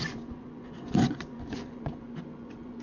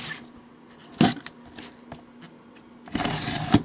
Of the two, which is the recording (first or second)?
second